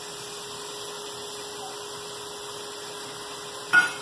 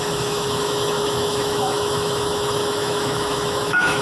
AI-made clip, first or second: second